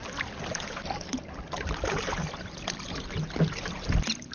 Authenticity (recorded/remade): recorded